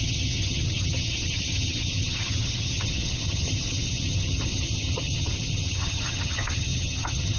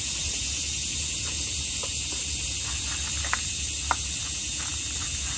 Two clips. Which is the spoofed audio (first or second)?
first